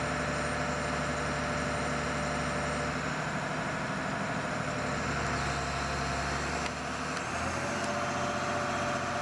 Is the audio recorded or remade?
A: recorded